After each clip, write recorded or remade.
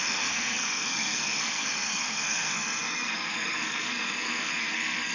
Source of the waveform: remade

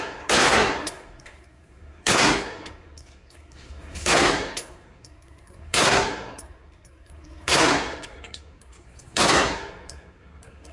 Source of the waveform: remade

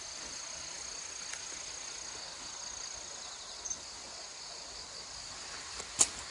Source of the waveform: recorded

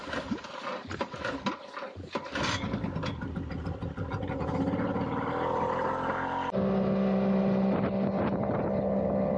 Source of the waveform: recorded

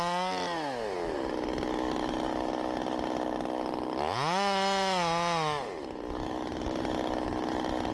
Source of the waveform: recorded